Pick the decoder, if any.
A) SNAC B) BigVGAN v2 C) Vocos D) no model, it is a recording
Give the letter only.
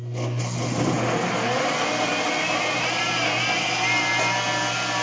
D